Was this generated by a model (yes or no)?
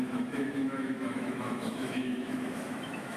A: yes